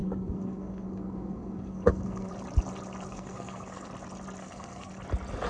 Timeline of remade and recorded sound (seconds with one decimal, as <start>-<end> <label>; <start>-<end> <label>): 0.0-2.3 remade; 2.3-3.1 recorded; 3.1-3.9 remade; 3.9-4.4 recorded; 4.4-4.9 remade; 4.9-5.5 recorded